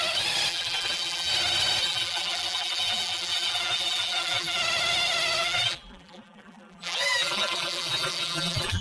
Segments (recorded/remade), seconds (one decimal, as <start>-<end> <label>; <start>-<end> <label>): 0.0-0.5 recorded; 0.5-1.3 remade; 1.3-1.8 recorded; 1.8-4.6 remade; 4.6-5.4 recorded; 5.4-8.8 remade